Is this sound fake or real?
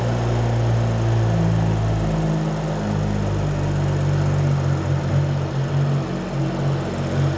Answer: real